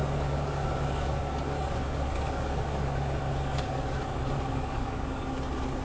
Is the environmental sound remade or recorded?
remade